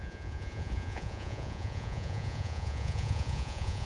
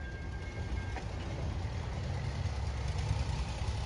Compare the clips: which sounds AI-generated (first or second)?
first